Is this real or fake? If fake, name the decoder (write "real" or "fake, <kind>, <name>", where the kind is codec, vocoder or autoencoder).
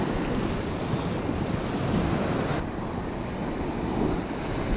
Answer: real